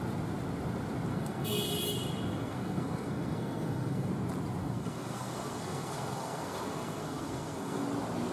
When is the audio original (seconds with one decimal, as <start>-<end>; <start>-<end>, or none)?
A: 0.0-1.1; 1.6-2.4; 4.1-4.6; 7.9-8.3